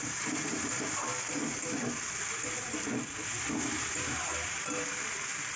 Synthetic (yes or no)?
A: no